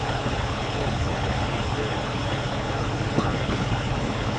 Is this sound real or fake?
fake